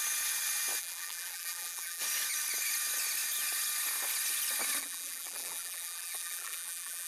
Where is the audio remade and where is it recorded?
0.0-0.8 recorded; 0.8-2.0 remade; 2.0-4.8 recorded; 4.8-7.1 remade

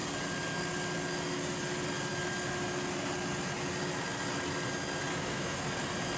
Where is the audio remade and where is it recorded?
0.0-5.1 recorded; 5.1-5.7 remade; 5.7-6.2 recorded